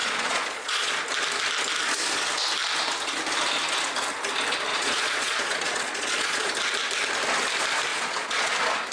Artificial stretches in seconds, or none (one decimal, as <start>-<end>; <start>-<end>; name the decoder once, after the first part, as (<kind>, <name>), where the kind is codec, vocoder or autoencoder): 0.0-0.9 (vocoder, Vocos); 4.7-6.5; 7.9-8.5